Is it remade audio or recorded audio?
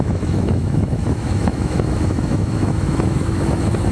remade